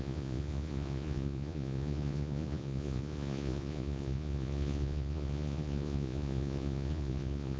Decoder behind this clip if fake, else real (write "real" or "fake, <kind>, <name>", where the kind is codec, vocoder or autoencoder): fake, vocoder, Vocos